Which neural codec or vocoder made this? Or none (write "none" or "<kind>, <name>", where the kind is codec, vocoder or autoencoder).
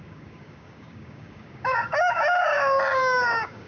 codec, DAC